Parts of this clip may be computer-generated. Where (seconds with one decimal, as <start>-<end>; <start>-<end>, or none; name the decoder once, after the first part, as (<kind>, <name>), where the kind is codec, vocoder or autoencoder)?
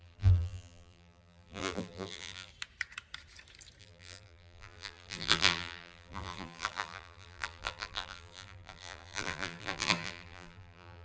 0.0-2.5 (vocoder, BigVGAN v2); 3.8-11.0